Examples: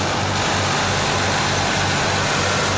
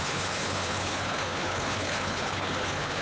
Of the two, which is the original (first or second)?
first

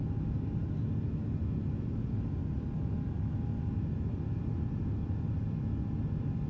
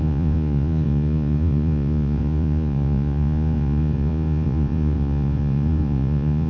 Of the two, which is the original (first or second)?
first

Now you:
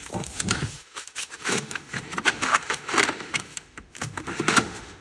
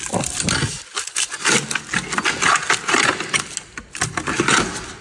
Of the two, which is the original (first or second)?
second